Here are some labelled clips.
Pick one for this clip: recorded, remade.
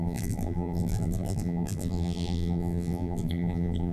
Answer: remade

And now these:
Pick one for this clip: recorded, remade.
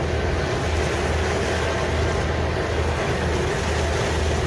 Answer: recorded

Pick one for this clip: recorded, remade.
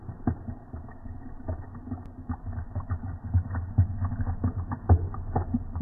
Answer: recorded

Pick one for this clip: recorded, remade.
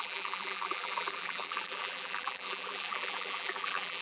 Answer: remade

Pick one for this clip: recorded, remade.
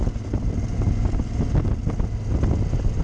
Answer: recorded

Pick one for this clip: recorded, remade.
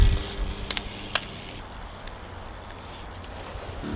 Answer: recorded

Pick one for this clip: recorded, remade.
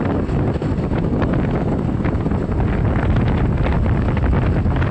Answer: recorded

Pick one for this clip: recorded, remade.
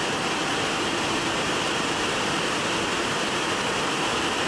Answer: remade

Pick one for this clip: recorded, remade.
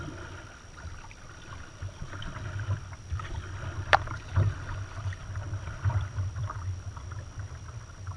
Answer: remade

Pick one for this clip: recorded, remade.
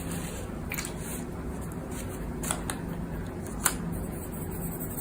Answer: recorded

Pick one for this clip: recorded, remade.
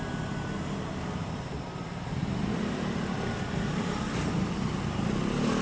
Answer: recorded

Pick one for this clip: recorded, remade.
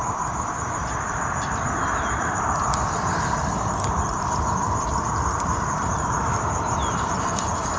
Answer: remade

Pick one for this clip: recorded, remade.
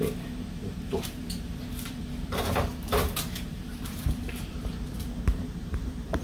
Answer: remade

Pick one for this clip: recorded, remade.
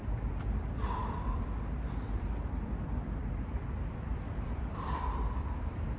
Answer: remade